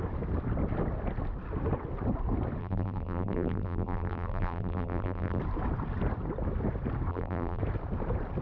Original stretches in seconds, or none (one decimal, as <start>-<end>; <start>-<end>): 0.0-2.6; 5.4-7.1; 7.6-8.4

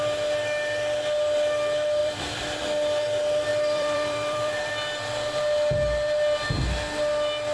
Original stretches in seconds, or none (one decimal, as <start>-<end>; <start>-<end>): 0.0-2.0; 2.6-3.5; 4.7-7.5